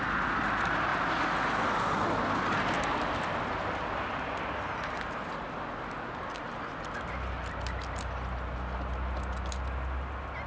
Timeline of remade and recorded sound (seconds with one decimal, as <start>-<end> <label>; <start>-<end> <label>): 0.0-10.5 recorded